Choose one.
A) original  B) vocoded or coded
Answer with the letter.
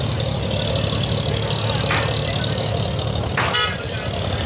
A